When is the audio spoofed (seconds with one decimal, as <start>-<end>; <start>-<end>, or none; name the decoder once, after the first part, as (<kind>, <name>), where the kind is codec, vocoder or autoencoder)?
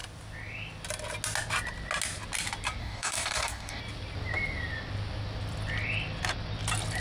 2.8-3.8 (codec, DAC)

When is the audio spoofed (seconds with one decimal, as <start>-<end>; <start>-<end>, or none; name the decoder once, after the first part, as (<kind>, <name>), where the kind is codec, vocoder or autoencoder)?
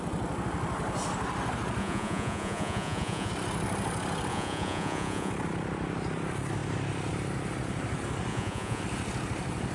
1.8-3.3 (vocoder, Vocos); 4.3-5.3; 8.3-8.8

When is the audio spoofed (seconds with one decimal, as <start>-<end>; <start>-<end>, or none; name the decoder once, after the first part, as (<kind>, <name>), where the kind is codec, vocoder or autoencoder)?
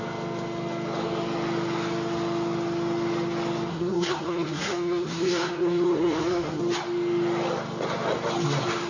3.7-6.6 (codec, SNAC)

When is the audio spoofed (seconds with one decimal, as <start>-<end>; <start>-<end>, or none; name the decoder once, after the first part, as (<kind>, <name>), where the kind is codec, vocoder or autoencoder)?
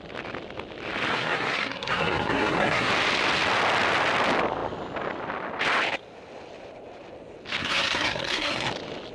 1.1-2.9 (codec, SNAC); 7.6-8.7